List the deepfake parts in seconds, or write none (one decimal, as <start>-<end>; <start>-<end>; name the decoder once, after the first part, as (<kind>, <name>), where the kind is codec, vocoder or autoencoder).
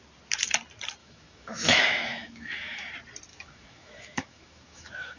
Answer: 1.0-2.9 (autoencoder, DAC-VAE); 3.3-5.2